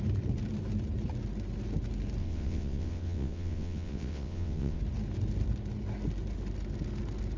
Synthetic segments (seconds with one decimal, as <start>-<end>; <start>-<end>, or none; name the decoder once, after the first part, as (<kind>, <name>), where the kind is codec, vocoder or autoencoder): 2.2-4.8 (vocoder, WaveNeXt)